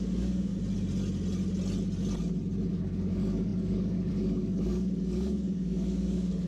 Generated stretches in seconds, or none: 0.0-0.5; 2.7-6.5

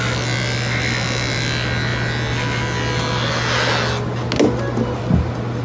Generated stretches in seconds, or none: none

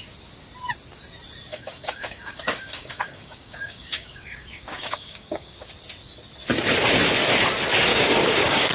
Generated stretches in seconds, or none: 1.5-5.7; 7.9-8.7

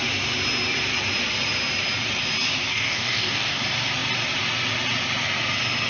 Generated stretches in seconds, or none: 2.7-3.6

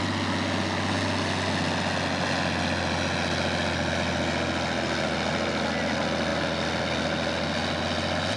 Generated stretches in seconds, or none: none

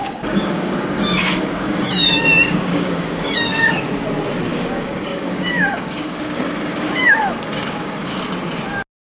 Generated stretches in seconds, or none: 0.0-3.8; 4.5-8.2

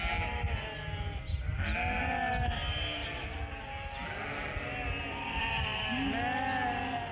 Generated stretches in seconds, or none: none